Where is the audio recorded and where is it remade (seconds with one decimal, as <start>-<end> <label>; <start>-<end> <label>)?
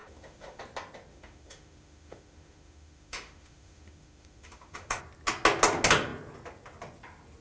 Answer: 0.0-0.6 remade; 0.6-1.1 recorded; 1.1-5.0 remade; 5.0-7.4 recorded